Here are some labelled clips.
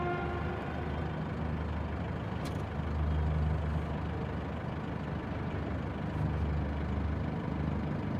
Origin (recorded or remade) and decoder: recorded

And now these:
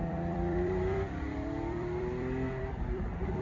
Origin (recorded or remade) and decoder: remade, vocoder, BigVGAN v2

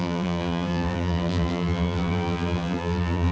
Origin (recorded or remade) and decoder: remade, vocoder, BigVGAN v2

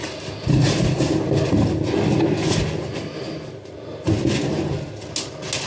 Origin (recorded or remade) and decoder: recorded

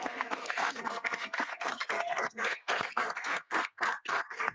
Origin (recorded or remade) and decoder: remade, codec, SNAC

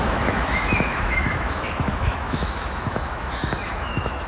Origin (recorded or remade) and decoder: remade, autoencoder, DAC-VAE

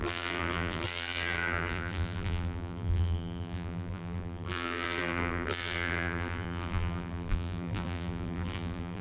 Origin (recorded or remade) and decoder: remade, vocoder, BigVGAN v2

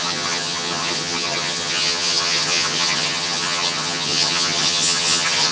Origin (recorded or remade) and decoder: remade, vocoder, HiFi-GAN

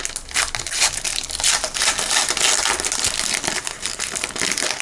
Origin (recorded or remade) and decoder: recorded